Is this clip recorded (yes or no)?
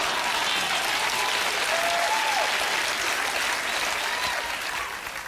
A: yes